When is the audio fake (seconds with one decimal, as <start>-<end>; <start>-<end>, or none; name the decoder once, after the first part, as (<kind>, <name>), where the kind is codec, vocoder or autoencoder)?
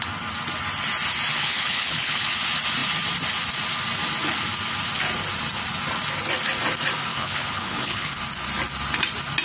1.4-2.2 (codec, HILCodec); 7.1-8.2